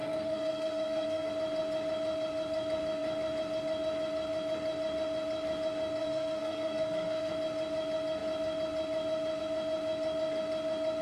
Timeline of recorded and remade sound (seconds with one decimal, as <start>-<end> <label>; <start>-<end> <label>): 0.0-1.3 remade; 1.3-6.0 recorded; 6.0-7.3 remade; 7.3-11.0 recorded